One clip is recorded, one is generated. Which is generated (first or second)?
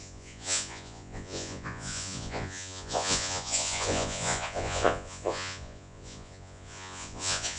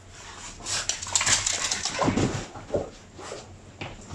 first